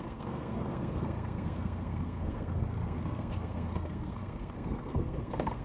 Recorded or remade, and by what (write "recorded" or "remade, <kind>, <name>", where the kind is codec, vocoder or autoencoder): remade, codec, SNAC